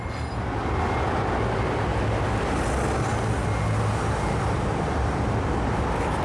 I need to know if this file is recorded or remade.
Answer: recorded